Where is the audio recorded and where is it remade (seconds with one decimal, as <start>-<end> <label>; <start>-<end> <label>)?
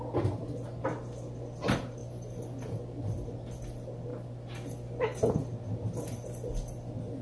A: 0.0-7.2 recorded